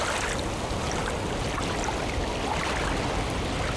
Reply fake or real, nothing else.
real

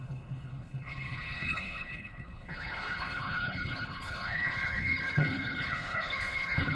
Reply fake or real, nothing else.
fake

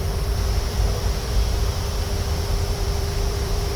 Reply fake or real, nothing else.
fake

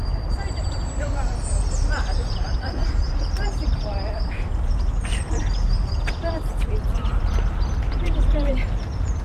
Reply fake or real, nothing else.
fake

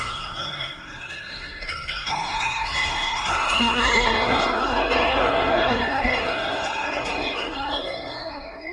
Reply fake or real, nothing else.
fake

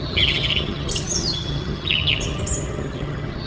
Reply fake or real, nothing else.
fake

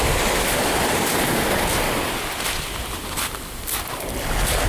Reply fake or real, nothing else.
real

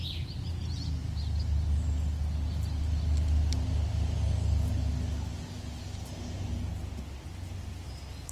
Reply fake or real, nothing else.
real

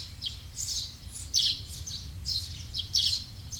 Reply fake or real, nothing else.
real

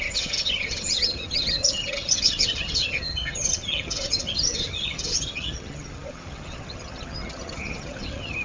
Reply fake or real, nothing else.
fake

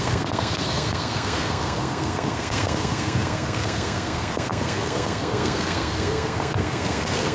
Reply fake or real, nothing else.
fake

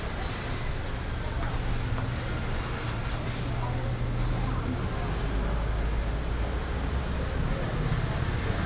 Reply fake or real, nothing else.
real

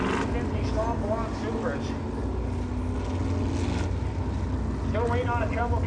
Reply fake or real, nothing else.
real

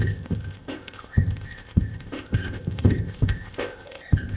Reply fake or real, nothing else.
fake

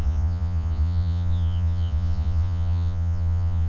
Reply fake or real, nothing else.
fake